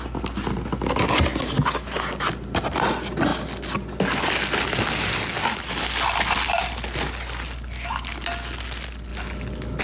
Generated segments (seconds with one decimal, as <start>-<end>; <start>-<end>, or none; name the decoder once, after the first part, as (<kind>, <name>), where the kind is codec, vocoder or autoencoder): none

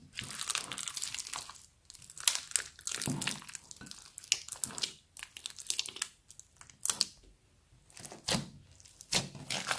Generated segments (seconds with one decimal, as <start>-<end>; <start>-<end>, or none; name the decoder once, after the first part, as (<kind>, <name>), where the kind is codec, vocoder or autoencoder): none

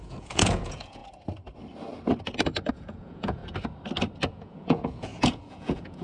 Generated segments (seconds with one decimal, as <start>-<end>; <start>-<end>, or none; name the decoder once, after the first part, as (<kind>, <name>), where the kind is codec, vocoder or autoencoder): 0.0-1.0 (vocoder, Vocos); 2.7-3.4; 4.3-6.0

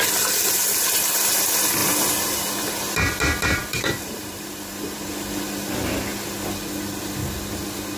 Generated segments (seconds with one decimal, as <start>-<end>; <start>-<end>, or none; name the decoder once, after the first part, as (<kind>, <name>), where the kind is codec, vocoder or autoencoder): 1.8-2.7 (vocoder, BigVGAN v2); 3.6-5.0

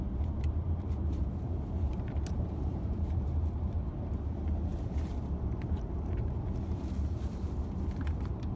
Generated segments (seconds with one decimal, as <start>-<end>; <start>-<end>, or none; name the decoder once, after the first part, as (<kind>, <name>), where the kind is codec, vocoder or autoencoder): 0.0-8.6 (vocoder, BigVGAN v2)